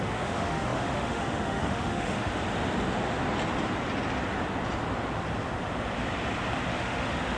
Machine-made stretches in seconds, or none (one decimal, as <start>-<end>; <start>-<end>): 0.0-2.3; 6.7-7.4